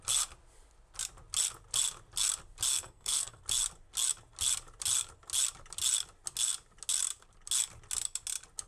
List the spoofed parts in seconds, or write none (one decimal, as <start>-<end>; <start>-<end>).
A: 2.7-3.4